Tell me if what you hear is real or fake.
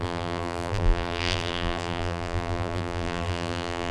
fake